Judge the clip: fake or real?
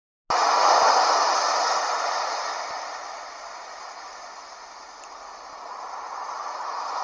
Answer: real